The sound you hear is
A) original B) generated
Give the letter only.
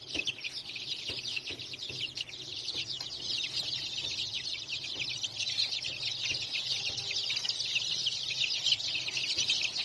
B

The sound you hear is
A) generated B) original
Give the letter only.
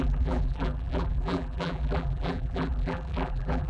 A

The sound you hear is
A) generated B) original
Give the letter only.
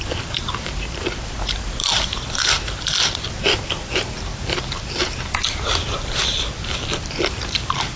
A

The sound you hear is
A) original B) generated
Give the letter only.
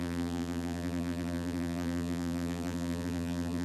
B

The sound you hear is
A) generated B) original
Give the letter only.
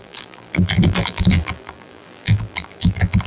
A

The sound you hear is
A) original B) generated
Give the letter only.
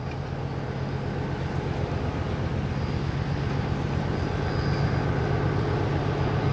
A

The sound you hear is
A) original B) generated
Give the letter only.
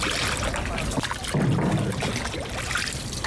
A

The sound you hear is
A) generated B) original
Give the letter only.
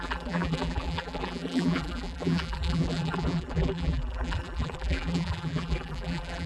A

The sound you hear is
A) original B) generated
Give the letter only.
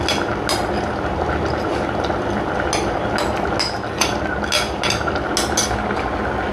A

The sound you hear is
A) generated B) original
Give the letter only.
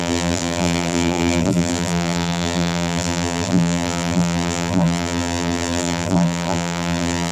A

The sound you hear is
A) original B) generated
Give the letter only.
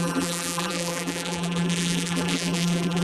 B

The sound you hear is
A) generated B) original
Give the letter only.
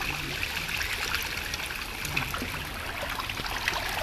B